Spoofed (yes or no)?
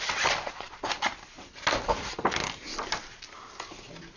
no